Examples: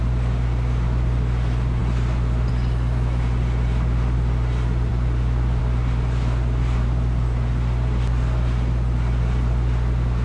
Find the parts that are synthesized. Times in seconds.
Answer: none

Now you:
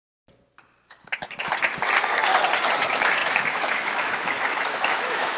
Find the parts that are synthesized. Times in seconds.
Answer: 2.8-5.4 (autoencoder, DAC-VAE)